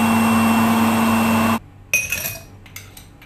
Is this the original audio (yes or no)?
yes